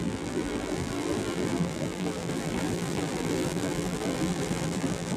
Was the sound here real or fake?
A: fake